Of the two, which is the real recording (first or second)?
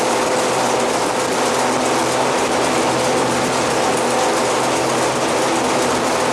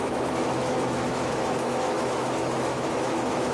first